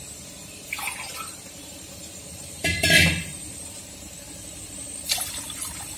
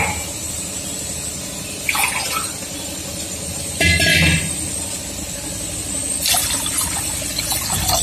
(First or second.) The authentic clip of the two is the second